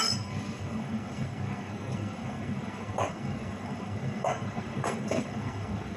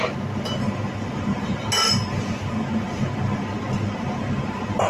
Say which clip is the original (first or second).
second